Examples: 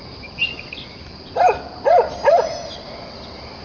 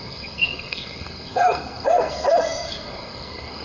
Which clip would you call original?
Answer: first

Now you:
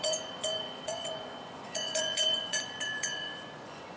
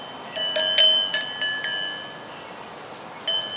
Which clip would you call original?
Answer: second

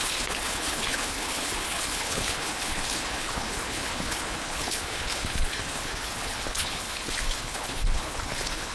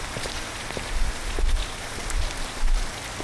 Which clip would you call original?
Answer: second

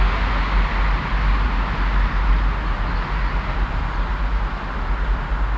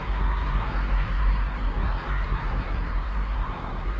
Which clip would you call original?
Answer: first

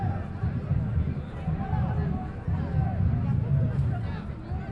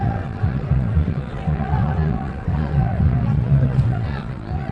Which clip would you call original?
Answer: first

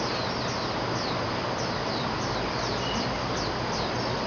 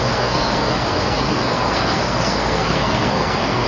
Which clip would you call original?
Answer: first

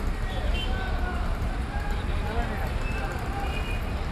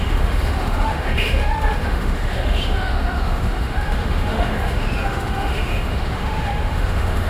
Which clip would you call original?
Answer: first